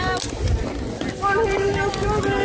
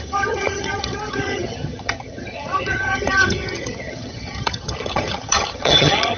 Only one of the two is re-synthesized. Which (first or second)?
second